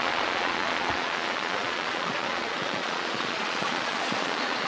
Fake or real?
fake